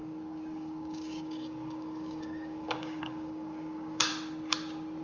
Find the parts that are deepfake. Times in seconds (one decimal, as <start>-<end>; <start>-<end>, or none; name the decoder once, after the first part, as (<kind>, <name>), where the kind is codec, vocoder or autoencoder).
0.0-4.1 (codec, DAC)